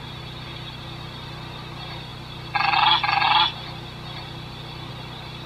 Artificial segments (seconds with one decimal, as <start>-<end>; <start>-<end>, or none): none